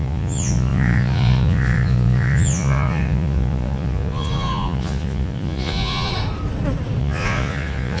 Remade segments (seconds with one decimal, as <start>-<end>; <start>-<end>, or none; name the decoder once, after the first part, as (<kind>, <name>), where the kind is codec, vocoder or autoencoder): 0.0-6.1 (vocoder, Vocos); 7.0-8.0